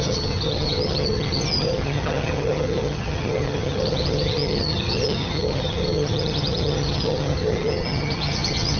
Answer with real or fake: fake